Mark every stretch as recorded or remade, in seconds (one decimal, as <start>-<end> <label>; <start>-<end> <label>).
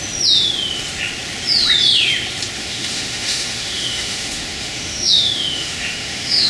0.0-2.6 recorded; 2.6-6.5 remade